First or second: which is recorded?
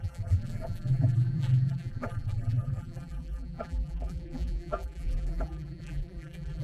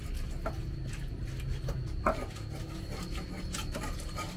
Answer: second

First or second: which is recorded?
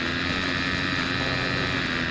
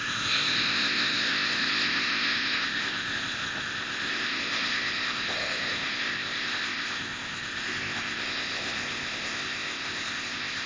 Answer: first